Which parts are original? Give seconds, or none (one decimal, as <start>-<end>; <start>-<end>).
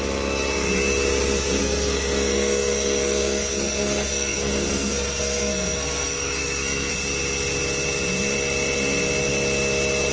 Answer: 0.0-1.6; 6.9-10.1